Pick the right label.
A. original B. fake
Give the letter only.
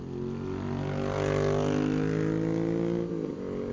A